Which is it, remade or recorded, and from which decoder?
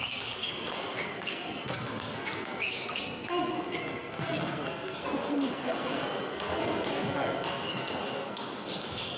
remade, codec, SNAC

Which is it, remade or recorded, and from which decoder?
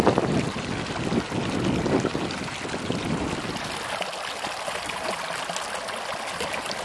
recorded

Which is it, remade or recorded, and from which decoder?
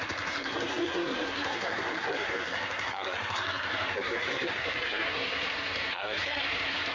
remade, codec, SNAC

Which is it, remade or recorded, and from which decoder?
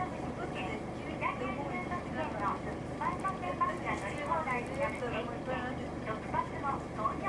recorded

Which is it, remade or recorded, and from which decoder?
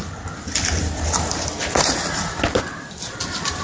recorded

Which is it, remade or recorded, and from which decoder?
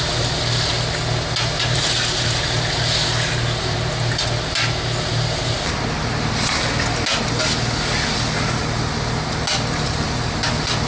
recorded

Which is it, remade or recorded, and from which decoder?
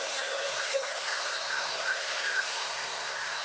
remade, codec, SNAC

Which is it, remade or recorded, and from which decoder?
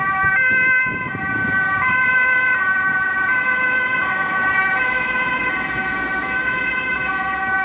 recorded